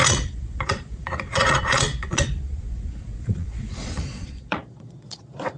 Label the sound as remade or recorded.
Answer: remade